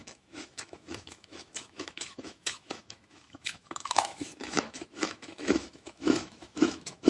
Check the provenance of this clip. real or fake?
fake